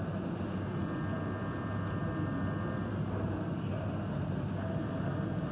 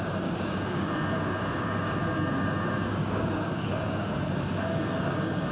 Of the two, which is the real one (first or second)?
first